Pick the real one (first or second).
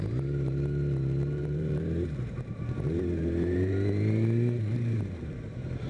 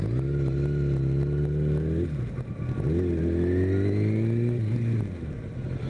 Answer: second